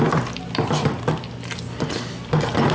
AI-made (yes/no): no